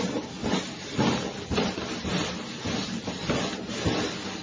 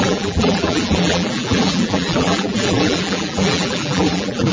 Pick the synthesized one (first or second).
second